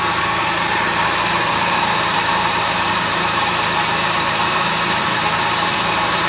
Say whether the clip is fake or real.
fake